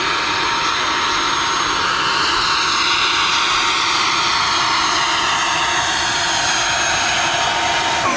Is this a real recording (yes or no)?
yes